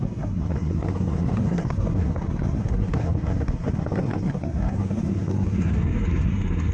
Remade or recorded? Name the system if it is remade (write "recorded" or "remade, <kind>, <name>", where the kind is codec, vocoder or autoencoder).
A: remade, codec, SNAC